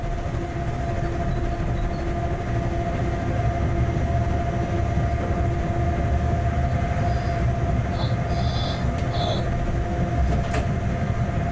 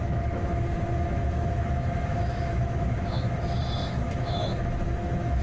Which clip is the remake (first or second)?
second